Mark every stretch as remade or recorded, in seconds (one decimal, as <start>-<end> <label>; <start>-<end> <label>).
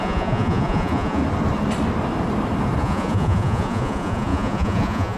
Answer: 0.0-1.2 remade; 1.2-2.8 recorded; 2.8-5.2 remade